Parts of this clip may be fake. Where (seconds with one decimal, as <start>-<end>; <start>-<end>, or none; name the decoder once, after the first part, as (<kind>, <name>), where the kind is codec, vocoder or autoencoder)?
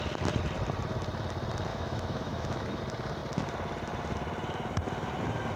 1.7-2.8 (autoencoder, DAC-VAE)